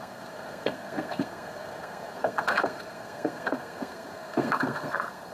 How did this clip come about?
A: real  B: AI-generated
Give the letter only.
B